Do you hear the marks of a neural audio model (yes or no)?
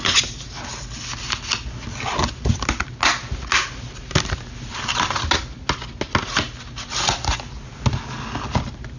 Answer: no